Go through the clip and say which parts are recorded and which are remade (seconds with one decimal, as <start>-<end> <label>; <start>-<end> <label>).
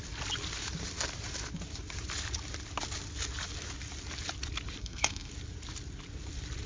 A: 0.0-4.8 recorded; 4.8-5.3 remade; 5.3-6.7 recorded